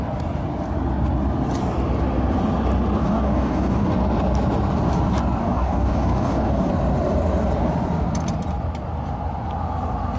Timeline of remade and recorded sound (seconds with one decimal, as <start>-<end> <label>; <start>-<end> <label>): 0.0-3.0 recorded; 3.0-3.9 remade; 3.9-5.4 recorded; 5.4-6.7 remade; 6.7-10.2 recorded